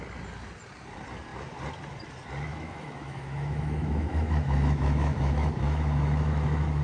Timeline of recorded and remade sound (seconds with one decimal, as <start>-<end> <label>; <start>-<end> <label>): 0.0-2.5 recorded; 2.5-6.8 remade